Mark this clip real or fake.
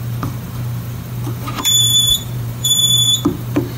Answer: fake